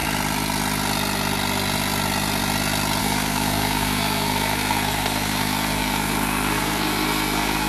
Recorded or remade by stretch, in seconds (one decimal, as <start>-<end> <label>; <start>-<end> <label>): 0.0-3.0 recorded; 3.0-7.7 remade